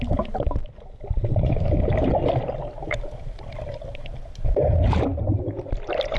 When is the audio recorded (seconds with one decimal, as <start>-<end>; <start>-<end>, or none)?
0.0-6.2